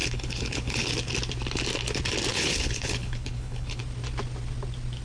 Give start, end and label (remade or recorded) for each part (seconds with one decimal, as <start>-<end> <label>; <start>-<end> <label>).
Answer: 0.0-0.9 remade; 0.9-2.3 recorded; 2.3-3.8 remade; 3.8-5.0 recorded